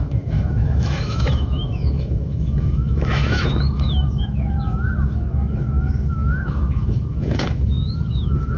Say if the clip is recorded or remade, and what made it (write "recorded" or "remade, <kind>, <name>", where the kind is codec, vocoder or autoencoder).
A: remade, autoencoder, DAC-VAE